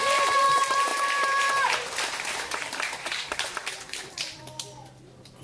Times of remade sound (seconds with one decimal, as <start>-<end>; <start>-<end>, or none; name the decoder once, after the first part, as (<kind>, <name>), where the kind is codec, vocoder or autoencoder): 0.9-4.1 (vocoder, BigVGAN v2)